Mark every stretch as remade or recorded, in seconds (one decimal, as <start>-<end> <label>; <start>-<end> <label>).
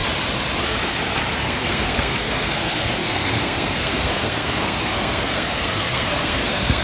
0.0-1.3 recorded; 1.3-6.8 remade